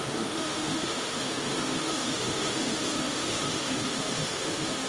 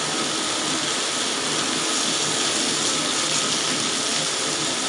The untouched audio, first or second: second